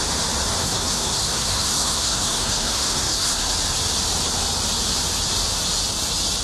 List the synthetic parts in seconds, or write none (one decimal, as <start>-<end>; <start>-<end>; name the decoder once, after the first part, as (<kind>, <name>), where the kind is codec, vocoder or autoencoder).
0.6-3.5 (codec, SNAC)